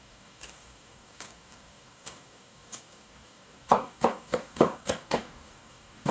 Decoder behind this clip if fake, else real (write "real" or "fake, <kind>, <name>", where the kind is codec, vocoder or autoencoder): fake, codec, DAC